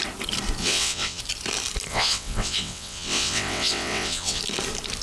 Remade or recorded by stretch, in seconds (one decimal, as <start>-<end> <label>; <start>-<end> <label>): 0.0-0.6 recorded; 0.6-1.2 remade; 1.2-1.9 recorded; 1.9-4.4 remade; 4.4-5.0 recorded